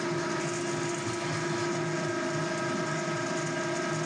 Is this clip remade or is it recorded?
recorded